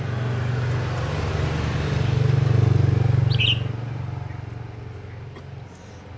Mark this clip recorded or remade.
recorded